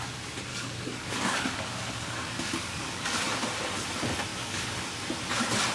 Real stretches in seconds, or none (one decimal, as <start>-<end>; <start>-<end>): 0.0-0.5; 3.2-4.3; 4.9-5.7

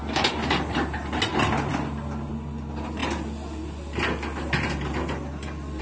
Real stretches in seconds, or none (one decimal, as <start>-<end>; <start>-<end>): 0.0-5.8

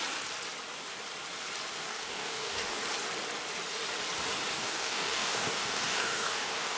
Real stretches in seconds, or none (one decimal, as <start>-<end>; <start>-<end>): 0.0-1.9; 2.8-4.5

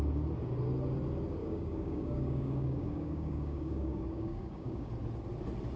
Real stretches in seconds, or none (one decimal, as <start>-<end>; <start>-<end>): 0.0-1.4; 4.9-5.8

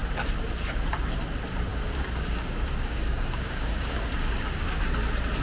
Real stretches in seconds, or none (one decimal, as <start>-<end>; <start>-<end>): 0.0-1.7; 4.8-5.4

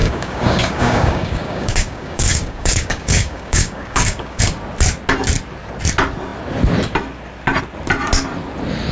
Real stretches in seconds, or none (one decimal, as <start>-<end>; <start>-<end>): 4.4-8.9

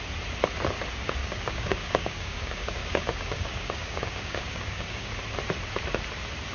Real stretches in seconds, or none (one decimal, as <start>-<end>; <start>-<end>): 0.0-1.2; 5.1-6.5

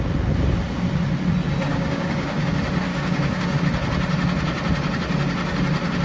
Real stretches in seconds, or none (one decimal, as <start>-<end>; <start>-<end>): 0.0-1.7; 2.5-2.9; 3.6-6.0